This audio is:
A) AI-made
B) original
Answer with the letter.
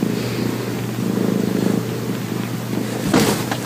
B